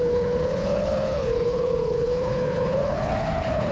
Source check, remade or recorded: remade